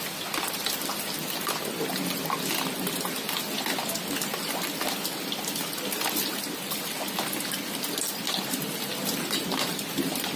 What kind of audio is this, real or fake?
real